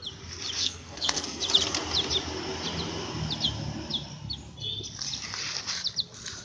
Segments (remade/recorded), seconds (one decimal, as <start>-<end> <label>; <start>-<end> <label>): 0.0-0.6 recorded; 0.6-1.4 remade; 1.4-6.4 recorded